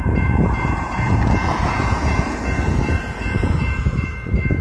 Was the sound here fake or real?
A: fake